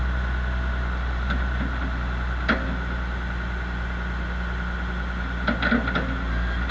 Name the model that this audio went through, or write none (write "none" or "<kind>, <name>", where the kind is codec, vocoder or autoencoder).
none